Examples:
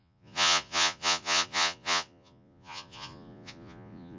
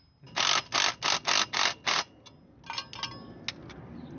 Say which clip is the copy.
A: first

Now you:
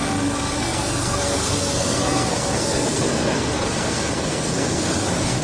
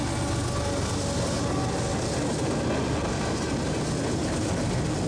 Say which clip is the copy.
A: first